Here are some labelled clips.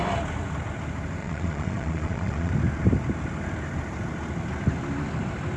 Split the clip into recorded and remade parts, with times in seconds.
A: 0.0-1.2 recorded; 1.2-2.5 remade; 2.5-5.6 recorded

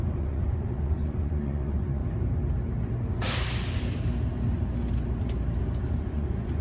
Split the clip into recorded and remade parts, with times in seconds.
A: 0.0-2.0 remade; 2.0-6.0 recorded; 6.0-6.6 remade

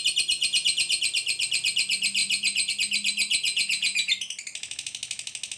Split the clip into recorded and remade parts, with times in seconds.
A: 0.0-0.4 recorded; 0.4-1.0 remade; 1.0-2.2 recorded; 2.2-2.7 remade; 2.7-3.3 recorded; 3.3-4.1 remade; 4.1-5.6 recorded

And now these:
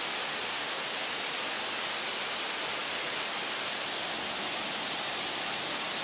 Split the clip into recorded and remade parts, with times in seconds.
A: 0.0-6.0 recorded

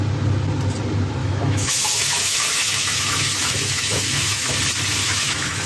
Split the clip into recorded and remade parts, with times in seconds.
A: 0.0-1.2 recorded; 1.2-4.6 remade; 4.6-5.0 recorded; 5.0-5.7 remade